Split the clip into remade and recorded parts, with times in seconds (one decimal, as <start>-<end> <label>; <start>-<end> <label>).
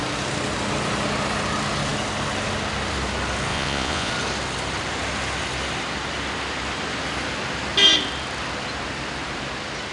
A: 0.0-3.5 recorded; 3.5-4.1 remade; 4.1-9.9 recorded